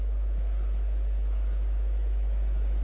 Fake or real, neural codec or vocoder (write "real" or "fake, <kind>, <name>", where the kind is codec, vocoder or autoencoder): fake, autoencoder, DAC-VAE